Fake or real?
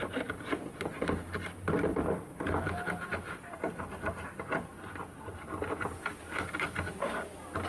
real